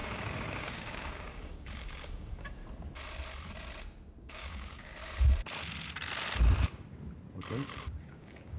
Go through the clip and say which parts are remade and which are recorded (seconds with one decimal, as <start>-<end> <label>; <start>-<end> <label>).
0.0-2.6 remade; 2.6-4.2 recorded; 4.2-4.9 remade; 4.9-7.5 recorded; 7.5-8.6 remade